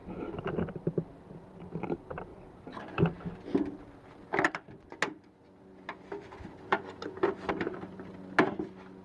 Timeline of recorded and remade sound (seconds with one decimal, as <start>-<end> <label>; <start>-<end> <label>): 0.0-9.0 recorded